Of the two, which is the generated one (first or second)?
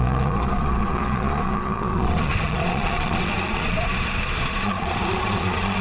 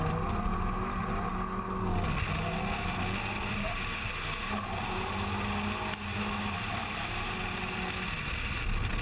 first